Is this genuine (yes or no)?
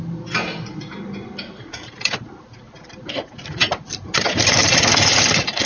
no